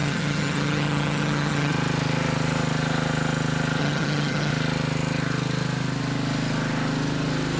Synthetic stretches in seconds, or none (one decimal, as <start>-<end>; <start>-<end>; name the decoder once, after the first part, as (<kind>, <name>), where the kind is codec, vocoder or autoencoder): 0.0-1.7 (vocoder, HiFi-GAN); 3.8-4.5